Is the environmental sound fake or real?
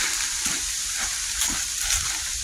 real